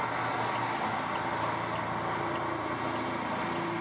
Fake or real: real